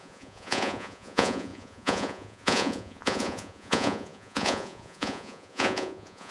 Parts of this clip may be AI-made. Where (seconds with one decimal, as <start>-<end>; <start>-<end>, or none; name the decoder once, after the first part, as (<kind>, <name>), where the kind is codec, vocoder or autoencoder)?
0.0-6.3 (vocoder, Vocos)